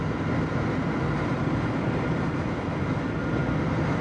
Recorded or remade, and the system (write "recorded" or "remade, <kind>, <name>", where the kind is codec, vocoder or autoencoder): recorded